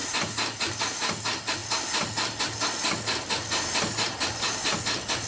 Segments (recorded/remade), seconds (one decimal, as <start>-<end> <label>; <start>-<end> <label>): 0.0-5.3 recorded